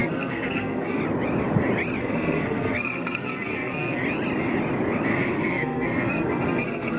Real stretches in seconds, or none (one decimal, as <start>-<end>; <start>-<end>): 1.0-2.0; 4.0-5.1